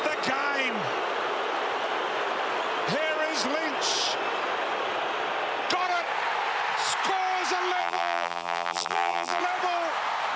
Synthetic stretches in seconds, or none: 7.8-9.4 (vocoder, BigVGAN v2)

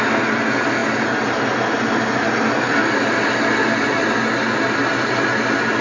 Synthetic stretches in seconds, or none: none